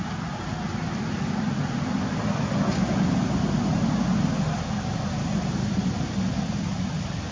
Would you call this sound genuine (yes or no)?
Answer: yes